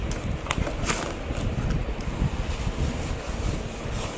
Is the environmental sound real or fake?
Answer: real